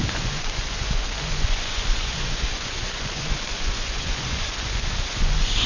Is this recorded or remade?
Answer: remade